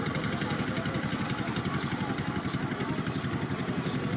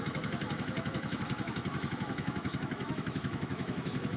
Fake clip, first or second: second